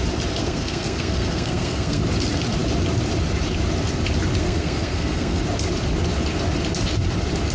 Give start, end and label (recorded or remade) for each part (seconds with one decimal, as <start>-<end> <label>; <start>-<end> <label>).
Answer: 0.0-0.4 recorded; 0.4-2.0 remade; 2.0-4.4 recorded; 4.4-5.4 remade; 5.4-7.5 recorded

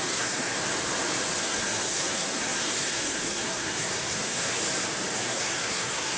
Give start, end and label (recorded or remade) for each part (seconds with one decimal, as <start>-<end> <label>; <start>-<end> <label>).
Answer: 0.0-0.5 remade; 0.5-1.4 recorded; 1.4-4.6 remade; 4.6-5.2 recorded; 5.2-6.2 remade

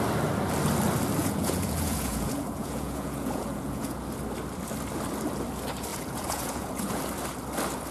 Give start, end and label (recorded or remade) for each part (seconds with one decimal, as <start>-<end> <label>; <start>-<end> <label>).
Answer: 0.0-1.2 recorded; 1.2-4.0 remade; 4.0-5.9 recorded; 5.9-7.0 remade; 7.0-7.9 recorded

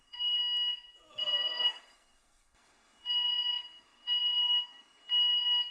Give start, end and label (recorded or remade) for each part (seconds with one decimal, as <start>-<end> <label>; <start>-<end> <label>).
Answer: 0.0-0.4 remade; 0.4-1.2 recorded; 1.2-5.7 remade

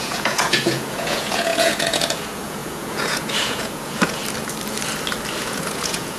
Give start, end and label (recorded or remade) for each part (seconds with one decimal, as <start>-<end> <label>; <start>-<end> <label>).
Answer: 0.0-4.2 remade; 4.2-5.4 recorded; 5.4-6.2 remade

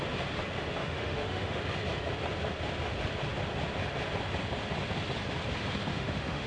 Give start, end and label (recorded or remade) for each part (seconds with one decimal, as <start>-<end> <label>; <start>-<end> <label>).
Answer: 0.0-0.8 recorded; 0.8-1.6 remade; 1.6-5.9 recorded; 5.9-6.5 remade